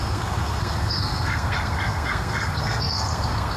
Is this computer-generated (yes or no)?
yes